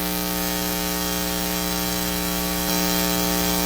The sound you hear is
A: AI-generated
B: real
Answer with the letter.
A